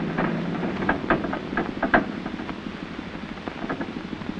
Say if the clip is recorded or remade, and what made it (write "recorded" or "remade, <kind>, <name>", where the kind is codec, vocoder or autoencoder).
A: recorded